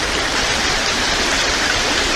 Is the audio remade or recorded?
recorded